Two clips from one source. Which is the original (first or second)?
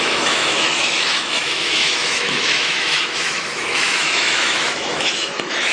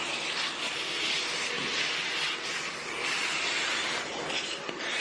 second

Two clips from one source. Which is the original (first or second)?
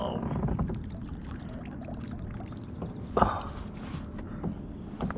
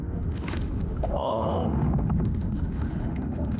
first